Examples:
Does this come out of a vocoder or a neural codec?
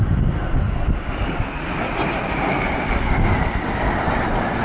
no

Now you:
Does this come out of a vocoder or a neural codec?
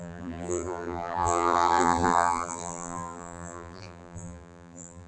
yes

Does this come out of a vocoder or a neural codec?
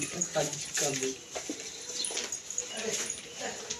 no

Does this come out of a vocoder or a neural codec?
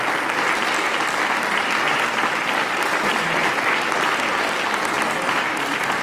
no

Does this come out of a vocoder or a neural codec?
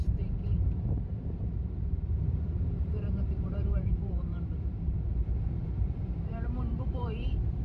yes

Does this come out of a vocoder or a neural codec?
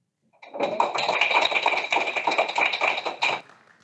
no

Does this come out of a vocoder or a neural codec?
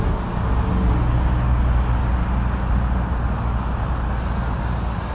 no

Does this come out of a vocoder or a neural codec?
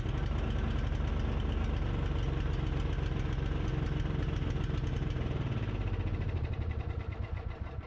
no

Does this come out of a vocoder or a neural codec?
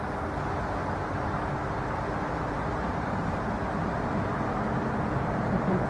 yes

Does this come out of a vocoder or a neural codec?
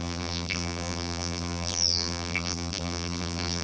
yes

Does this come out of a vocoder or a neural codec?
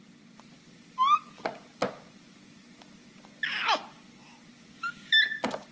no